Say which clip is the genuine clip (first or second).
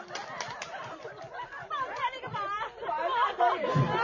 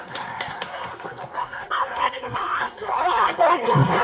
first